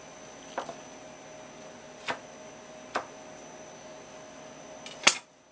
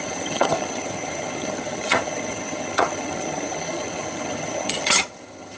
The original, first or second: first